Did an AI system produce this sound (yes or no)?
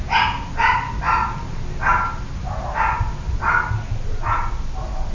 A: no